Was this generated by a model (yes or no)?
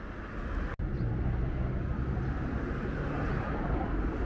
no